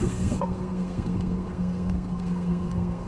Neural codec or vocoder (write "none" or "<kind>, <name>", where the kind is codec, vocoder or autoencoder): codec, SNAC